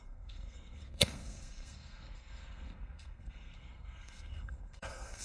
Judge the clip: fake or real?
fake